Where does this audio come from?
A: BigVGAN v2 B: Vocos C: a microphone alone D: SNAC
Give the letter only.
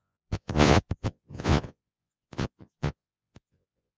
B